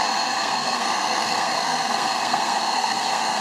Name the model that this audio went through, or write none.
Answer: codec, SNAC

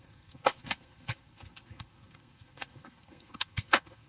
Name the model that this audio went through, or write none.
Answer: codec, SNAC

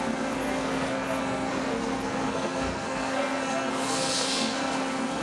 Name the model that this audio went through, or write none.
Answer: codec, SNAC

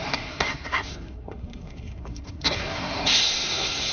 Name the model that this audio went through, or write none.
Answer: codec, SNAC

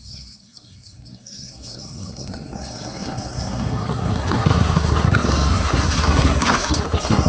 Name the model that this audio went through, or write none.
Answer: codec, SNAC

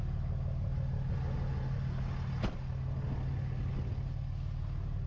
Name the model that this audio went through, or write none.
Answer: none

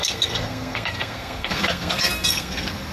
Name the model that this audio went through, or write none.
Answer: codec, SNAC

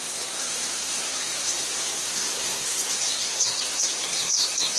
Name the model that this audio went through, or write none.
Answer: codec, SNAC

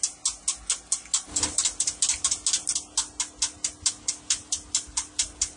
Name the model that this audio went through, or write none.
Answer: none